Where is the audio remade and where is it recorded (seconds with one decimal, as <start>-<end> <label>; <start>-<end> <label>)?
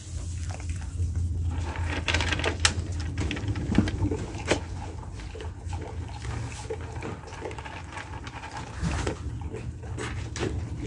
0.0-10.9 recorded